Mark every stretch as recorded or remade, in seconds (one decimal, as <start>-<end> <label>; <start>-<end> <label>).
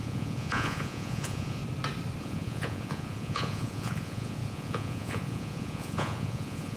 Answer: 0.0-1.6 remade; 1.6-2.2 recorded; 2.2-6.8 remade